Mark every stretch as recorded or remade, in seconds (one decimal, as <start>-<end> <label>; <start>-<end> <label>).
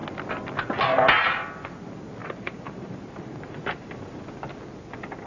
0.0-2.2 recorded; 2.2-4.2 remade; 4.2-5.3 recorded